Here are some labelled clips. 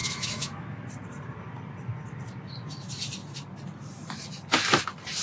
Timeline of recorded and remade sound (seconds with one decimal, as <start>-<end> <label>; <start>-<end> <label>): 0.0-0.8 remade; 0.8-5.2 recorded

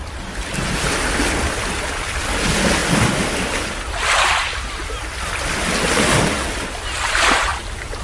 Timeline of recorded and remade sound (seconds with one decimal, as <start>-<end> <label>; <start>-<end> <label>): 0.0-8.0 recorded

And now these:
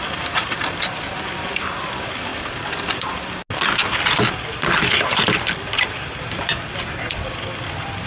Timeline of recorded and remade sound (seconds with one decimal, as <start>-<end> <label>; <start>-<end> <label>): 0.0-2.3 remade; 2.3-3.9 recorded; 3.9-8.1 remade